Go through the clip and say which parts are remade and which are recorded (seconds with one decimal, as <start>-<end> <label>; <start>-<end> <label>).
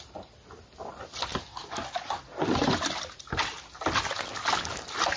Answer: 0.0-5.2 recorded